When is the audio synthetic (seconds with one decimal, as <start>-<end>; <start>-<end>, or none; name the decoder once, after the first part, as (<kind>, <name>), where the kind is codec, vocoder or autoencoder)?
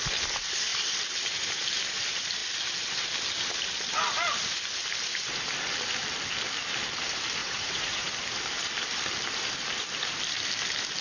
7.4-8.1 (vocoder, Vocos)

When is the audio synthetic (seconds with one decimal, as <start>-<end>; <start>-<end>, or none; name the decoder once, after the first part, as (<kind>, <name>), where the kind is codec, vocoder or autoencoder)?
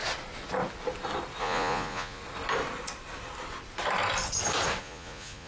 1.4-2.2 (vocoder, Vocos); 4.8-5.5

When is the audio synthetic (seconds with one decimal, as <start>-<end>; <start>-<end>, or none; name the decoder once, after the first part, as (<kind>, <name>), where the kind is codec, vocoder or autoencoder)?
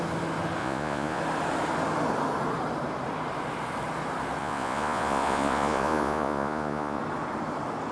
0.6-1.2 (vocoder, Vocos); 4.4-7.0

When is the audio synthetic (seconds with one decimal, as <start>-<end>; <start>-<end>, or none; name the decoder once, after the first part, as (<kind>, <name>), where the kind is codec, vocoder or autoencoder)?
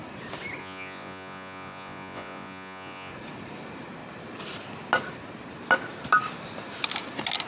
0.6-3.1 (vocoder, Vocos)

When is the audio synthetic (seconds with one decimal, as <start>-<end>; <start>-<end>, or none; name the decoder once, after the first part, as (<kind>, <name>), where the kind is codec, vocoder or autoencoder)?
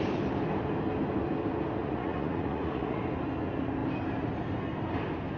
1.8-3.0 (vocoder, Vocos)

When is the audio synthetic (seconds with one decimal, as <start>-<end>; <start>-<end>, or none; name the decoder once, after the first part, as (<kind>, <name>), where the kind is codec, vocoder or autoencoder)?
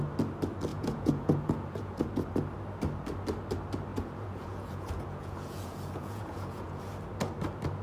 0.7-2.1 (vocoder, Vocos); 3.9-6.8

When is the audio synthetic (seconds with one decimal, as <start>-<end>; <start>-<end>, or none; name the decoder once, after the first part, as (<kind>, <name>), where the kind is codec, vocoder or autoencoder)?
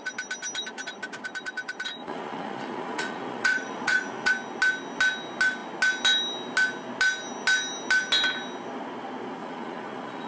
2.0-4.3 (vocoder, Vocos); 9.4-10.3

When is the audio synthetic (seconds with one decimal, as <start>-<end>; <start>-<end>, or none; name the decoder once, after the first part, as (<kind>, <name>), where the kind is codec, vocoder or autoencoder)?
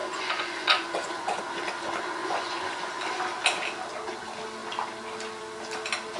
0.0-1.4 (vocoder, Vocos); 2.2-2.9